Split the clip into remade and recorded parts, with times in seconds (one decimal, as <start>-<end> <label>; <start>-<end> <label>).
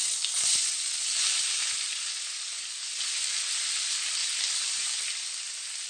0.0-1.6 recorded; 1.6-3.3 remade; 3.3-5.9 recorded